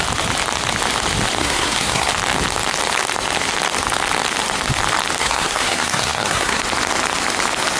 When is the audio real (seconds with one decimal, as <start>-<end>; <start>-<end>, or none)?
0.0-1.4; 2.1-5.2; 6.6-7.8